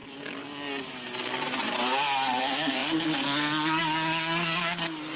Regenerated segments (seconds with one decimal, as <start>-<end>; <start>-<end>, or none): 2.4-5.2